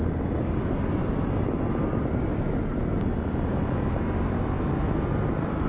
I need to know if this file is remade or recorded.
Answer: recorded